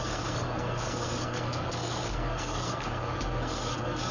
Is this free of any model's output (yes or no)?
no